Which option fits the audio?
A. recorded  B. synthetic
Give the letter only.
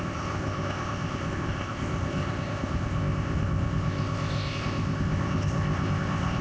B